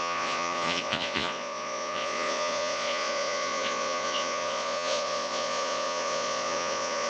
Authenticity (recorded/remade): remade